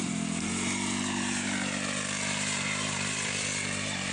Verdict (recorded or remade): remade